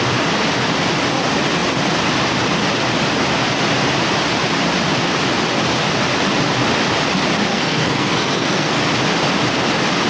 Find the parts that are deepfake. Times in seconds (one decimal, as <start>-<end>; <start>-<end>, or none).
7.5-8.8